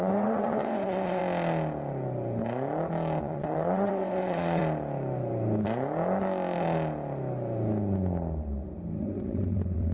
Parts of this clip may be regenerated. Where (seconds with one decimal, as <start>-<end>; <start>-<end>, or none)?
0.0-1.2; 3.2-4.6; 9.0-9.9